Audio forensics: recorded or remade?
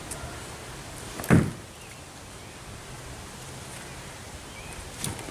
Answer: recorded